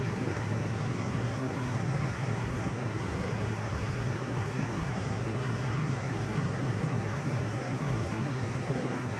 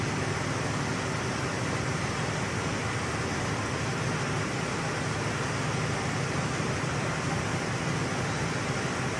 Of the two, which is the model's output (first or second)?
first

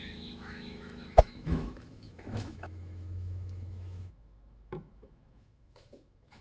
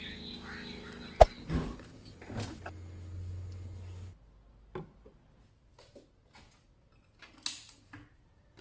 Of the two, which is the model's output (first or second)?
first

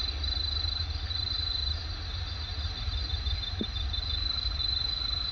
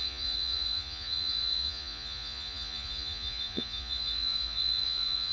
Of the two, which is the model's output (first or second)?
second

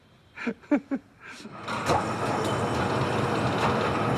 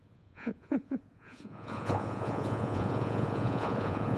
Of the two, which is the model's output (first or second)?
second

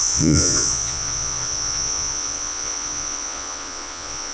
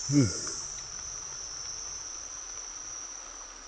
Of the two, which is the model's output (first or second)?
first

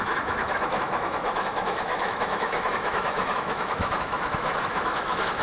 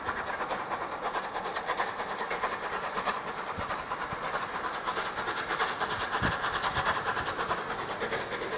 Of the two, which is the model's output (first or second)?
first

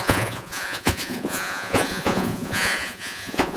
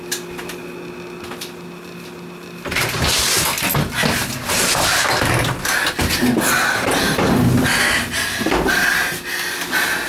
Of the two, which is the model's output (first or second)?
first